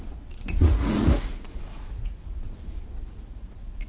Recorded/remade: remade